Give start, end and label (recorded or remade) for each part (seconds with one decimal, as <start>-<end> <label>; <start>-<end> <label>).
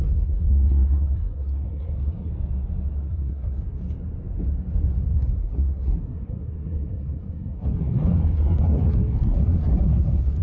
0.0-2.3 remade; 2.3-3.0 recorded; 3.0-3.8 remade; 3.8-5.4 recorded; 5.4-10.4 remade